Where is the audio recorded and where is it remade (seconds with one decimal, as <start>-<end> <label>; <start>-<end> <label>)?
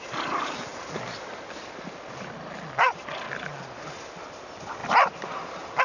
0.0-0.7 recorded; 0.7-2.3 remade; 2.3-4.8 recorded; 4.8-5.8 remade